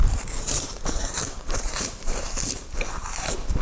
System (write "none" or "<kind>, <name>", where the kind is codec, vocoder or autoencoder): vocoder, BigVGAN v2